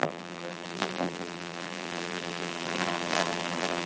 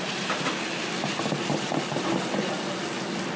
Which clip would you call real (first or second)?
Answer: second